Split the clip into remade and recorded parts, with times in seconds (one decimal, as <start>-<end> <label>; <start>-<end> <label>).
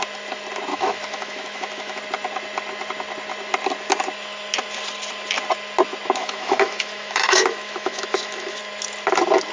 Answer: 0.0-0.7 recorded; 0.7-2.0 remade; 2.0-6.2 recorded; 6.2-8.6 remade; 8.6-9.5 recorded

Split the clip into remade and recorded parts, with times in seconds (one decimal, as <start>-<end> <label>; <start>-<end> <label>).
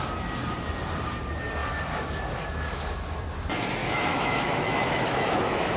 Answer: 0.0-3.8 recorded; 3.8-5.8 remade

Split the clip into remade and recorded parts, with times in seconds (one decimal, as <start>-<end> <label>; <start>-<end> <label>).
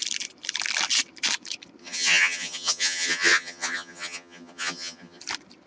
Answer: 0.0-1.8 recorded; 1.8-5.2 remade; 5.2-5.7 recorded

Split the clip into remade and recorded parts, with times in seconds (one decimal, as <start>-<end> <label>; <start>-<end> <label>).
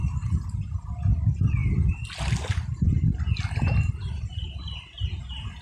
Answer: 0.0-5.6 recorded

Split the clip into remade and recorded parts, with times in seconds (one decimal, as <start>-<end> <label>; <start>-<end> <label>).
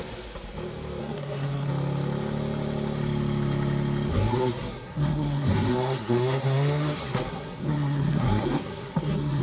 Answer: 0.0-1.0 recorded; 1.0-1.7 remade; 1.7-4.1 recorded; 4.1-9.4 remade